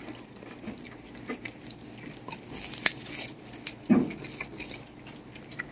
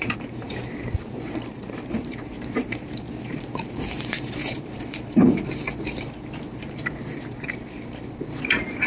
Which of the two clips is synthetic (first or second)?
second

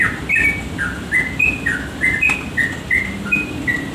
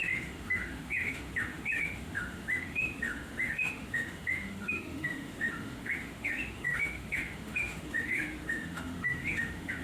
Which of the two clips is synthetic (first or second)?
second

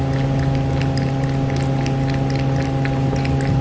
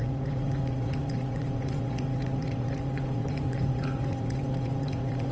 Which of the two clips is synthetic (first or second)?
second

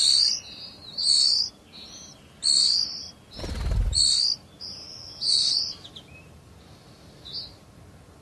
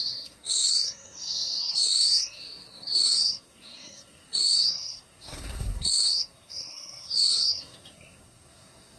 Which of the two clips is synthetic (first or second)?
second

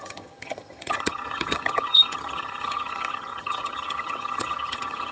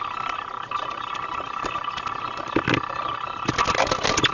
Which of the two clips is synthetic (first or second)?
first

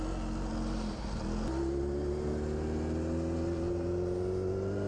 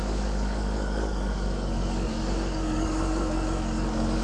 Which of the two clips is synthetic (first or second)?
second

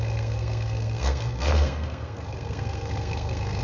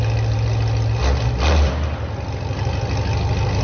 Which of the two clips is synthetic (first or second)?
first